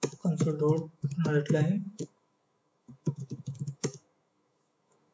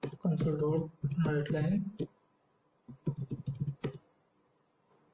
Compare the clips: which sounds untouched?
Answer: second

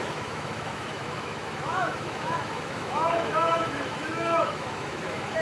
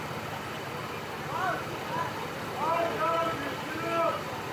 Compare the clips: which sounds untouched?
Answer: second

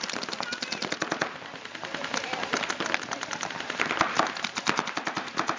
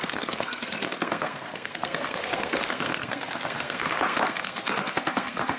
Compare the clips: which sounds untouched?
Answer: first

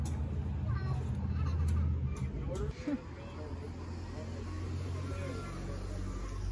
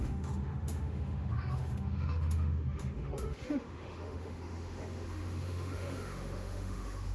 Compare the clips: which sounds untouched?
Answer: first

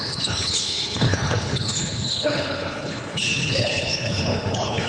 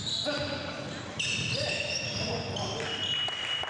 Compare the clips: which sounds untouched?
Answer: second